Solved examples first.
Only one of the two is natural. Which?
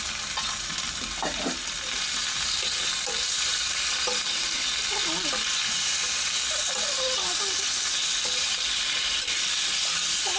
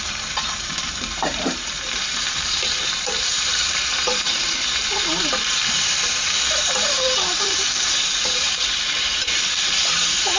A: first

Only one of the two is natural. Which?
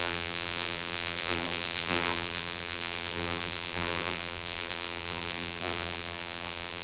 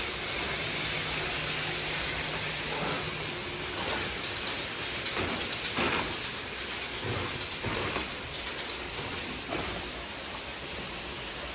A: second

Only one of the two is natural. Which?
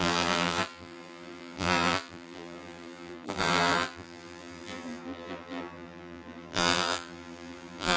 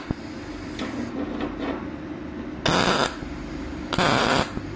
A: second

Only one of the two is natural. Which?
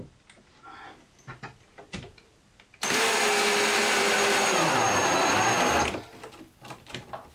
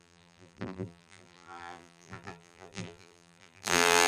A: first